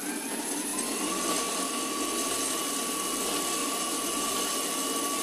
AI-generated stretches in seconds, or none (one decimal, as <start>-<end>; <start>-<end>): 3.6-4.3